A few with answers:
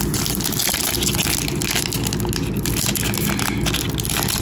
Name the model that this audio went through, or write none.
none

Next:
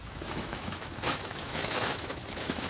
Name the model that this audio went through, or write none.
autoencoder, DAC-VAE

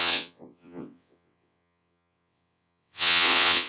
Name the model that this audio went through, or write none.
vocoder, WaveNeXt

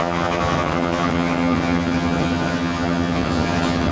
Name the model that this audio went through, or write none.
vocoder, HiFi-GAN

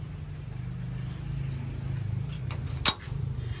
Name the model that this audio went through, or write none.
none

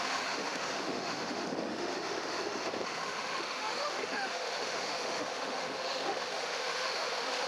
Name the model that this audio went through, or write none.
autoencoder, DAC-VAE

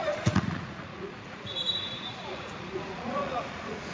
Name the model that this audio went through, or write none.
vocoder, Vocos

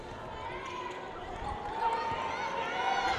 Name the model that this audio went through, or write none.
none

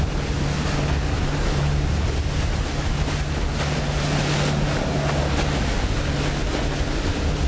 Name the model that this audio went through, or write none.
none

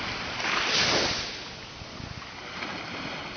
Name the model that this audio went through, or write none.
none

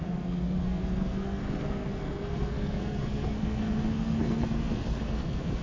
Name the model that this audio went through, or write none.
codec, SNAC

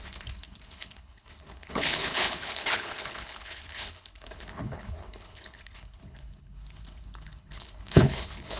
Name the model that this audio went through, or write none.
codec, HILCodec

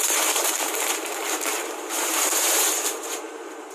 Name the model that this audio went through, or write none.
vocoder, BigVGAN v2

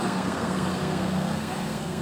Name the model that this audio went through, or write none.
codec, SNAC